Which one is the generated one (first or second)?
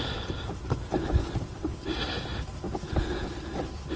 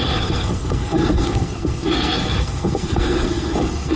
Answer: second